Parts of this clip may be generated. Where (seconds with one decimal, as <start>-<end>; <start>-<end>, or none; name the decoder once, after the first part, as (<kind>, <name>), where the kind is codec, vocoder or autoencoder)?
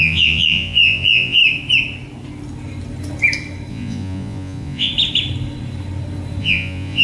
0.0-1.4 (vocoder, Vocos); 3.7-4.9; 6.4-7.0